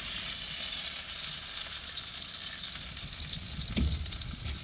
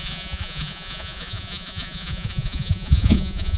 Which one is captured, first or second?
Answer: first